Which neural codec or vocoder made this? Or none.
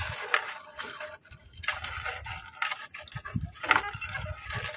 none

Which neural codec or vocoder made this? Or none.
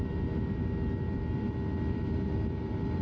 vocoder, BigVGAN v2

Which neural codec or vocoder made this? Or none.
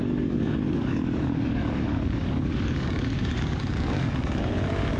codec, DAC